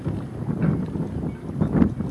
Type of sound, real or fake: real